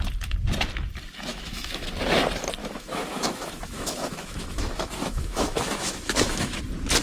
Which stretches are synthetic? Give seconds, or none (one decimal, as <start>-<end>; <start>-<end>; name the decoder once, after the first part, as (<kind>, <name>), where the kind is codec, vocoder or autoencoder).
1.3-1.9 (autoencoder, DAC-VAE); 2.6-6.6